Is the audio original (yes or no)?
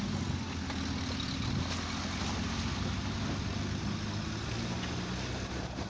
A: yes